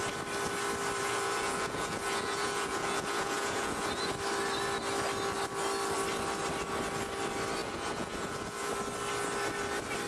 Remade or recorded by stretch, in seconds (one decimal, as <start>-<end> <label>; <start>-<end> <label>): 0.0-1.0 recorded; 1.0-4.1 remade; 4.1-7.6 recorded; 7.6-8.7 remade; 8.7-10.1 recorded